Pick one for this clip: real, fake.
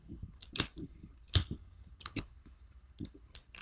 fake